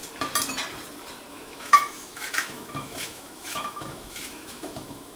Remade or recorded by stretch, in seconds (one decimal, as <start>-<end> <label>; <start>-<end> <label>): 0.0-1.3 recorded; 1.3-5.2 remade